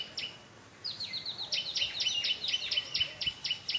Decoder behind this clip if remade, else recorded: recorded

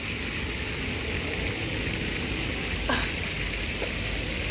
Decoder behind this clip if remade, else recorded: recorded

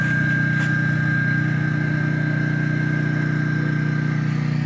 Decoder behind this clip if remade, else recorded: recorded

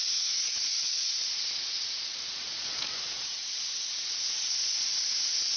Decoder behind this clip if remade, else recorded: remade, vocoder, Vocos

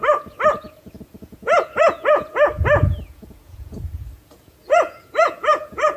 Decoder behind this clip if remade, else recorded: remade, vocoder, Vocos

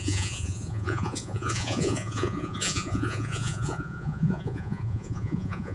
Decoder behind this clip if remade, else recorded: remade, vocoder, Vocos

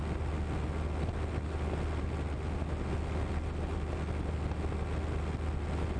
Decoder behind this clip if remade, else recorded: recorded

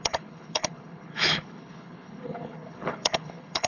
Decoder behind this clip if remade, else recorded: remade, codec, HILCodec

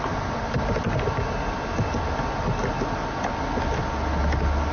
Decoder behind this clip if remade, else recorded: recorded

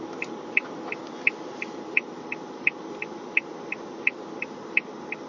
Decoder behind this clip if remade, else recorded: remade, vocoder, BigVGAN v2